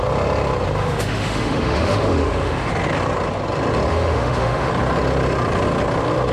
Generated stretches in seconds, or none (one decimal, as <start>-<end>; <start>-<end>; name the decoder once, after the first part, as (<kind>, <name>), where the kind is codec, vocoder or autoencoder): 0.8-2.7 (autoencoder, DAC-VAE); 3.9-4.7